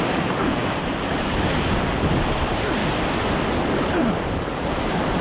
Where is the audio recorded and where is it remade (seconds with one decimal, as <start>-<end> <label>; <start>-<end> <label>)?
0.0-2.8 remade; 2.8-3.9 recorded; 3.9-5.2 remade

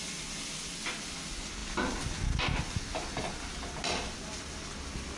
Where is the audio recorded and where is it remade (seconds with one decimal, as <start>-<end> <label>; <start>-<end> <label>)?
0.0-5.2 recorded

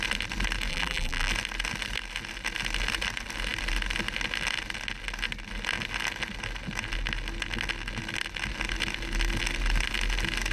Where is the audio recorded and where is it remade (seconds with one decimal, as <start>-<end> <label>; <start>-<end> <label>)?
0.0-0.7 recorded; 0.7-1.3 remade; 1.3-10.5 recorded

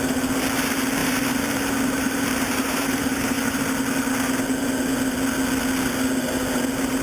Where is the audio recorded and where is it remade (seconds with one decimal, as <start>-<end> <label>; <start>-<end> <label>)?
0.0-1.0 recorded; 1.0-3.6 remade; 3.6-7.0 recorded

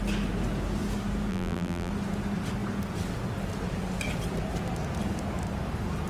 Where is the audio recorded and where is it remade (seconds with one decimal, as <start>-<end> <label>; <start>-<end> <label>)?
0.0-1.3 recorded; 1.3-1.9 remade; 1.9-6.1 recorded

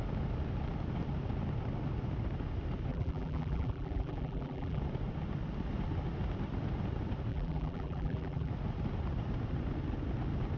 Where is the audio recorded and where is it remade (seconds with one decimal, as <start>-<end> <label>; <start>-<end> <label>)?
0.0-2.9 recorded; 2.9-4.8 remade; 4.8-7.3 recorded; 7.3-8.5 remade; 8.5-10.6 recorded